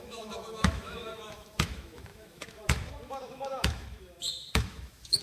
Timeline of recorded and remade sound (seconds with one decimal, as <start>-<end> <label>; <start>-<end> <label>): 0.0-5.2 remade